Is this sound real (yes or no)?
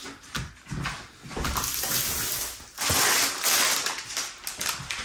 yes